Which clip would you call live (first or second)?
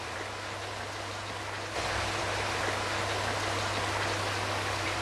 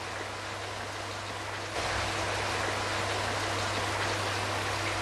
second